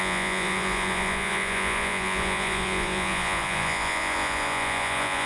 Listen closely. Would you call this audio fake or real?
fake